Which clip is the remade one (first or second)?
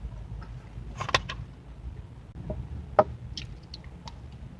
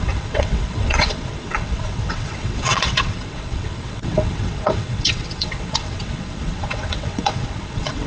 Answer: second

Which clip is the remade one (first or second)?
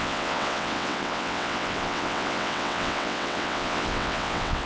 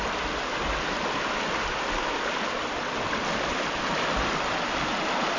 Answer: first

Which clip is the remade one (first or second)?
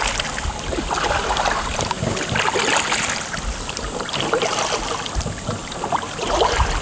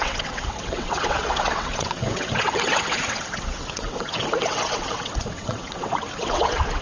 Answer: second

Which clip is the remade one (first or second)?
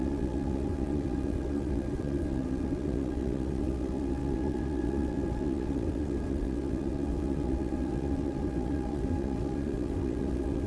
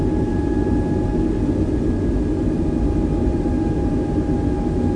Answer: first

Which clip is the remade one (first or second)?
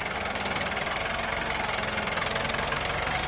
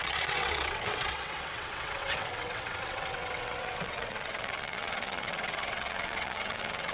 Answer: second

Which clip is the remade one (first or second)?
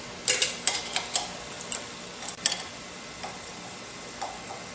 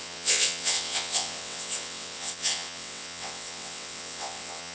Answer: second